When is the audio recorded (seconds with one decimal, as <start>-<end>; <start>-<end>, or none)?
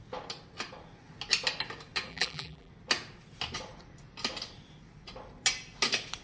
0.0-2.1; 2.7-6.2